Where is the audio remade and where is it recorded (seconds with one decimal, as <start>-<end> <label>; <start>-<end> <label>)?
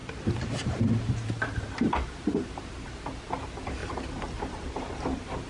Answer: 0.0-3.0 remade; 3.0-3.8 recorded; 3.8-5.5 remade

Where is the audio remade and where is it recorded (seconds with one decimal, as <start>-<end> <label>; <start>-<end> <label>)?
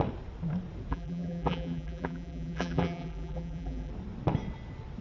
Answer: 0.0-0.9 recorded; 0.9-3.9 remade; 3.9-5.0 recorded